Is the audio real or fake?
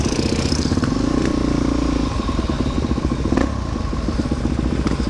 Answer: real